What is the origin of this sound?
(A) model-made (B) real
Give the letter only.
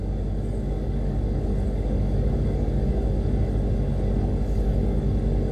A